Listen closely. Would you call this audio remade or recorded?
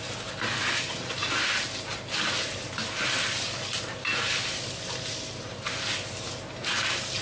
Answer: recorded